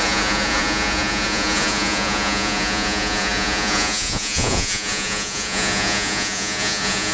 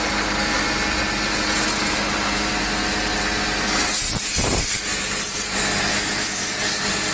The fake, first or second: first